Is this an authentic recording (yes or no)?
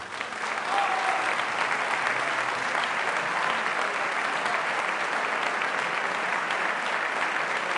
yes